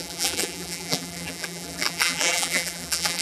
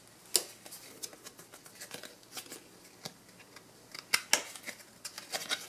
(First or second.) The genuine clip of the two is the second